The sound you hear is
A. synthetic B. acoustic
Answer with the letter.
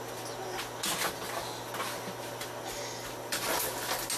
B